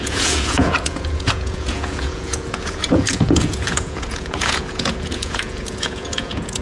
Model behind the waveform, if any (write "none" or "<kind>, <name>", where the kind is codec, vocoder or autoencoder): vocoder, Vocos